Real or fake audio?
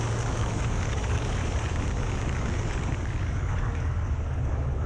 fake